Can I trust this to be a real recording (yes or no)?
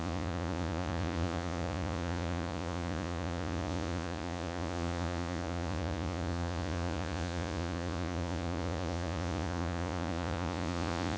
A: no